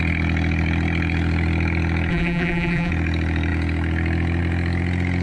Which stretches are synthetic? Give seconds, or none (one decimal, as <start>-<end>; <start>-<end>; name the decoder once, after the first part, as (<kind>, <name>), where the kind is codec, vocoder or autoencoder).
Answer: 2.1-2.9 (vocoder, BigVGAN v2)

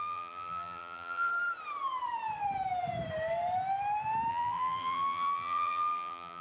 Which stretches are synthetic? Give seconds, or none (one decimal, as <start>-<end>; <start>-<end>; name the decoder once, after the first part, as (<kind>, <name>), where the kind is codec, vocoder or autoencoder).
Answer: 0.0-1.3 (vocoder, BigVGAN v2); 4.3-6.4